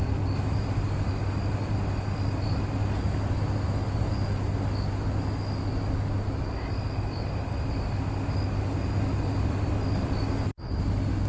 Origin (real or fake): real